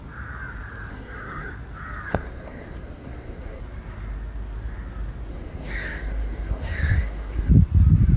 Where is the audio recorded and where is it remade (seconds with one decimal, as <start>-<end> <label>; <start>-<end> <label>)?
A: 0.0-0.9 recorded; 0.9-1.5 remade; 1.5-2.1 recorded; 2.1-3.6 remade; 3.6-5.3 recorded; 5.3-7.5 remade; 7.5-8.2 recorded